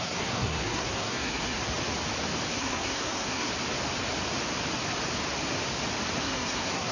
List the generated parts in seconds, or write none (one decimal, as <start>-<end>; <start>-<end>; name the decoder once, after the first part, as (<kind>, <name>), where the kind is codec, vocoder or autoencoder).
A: 0.0-1.6 (codec, SNAC); 2.5-3.5; 6.2-6.9